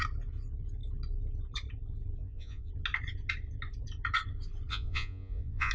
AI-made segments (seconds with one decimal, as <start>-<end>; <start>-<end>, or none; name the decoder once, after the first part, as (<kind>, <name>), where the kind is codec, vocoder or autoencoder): 2.2-2.7 (vocoder, Vocos); 4.7-5.7

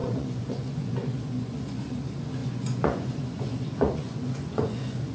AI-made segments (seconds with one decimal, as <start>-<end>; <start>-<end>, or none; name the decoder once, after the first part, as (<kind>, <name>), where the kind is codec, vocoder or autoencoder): 0.0-5.1 (vocoder, Vocos)

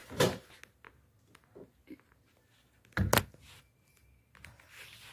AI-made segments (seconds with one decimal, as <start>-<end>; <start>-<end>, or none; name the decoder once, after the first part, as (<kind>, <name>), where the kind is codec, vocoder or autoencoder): none

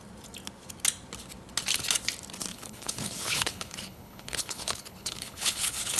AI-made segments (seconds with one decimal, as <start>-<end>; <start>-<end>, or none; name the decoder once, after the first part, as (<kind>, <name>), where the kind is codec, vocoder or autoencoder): 2.5-6.0 (codec, HILCodec)

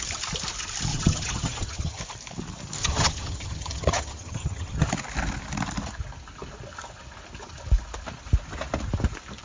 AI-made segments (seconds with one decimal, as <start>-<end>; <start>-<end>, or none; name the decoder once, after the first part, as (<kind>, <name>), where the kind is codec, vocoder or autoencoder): 0.9-2.0 (vocoder, HiFi-GAN); 2.8-4.9

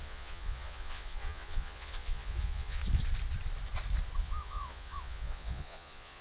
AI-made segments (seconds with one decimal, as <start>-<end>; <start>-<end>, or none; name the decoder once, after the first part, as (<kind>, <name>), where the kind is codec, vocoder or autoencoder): 0.0-2.8 (vocoder, Vocos); 4.2-6.2

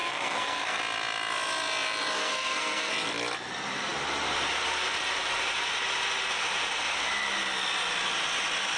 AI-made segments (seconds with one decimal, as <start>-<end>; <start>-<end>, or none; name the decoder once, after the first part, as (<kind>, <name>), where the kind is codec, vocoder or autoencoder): 0.0-0.8 (codec, SNAC); 2.2-2.9